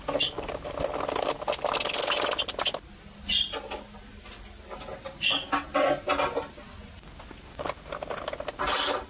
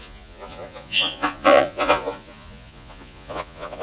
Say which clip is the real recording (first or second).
first